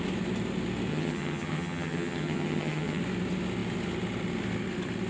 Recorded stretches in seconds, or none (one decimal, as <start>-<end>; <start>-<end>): 0.0-0.9; 3.0-5.1